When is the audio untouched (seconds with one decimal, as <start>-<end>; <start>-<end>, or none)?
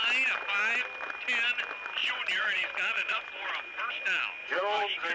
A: 0.0-2.0; 3.9-4.4